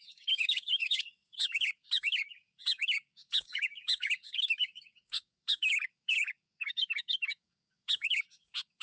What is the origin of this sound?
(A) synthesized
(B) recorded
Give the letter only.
A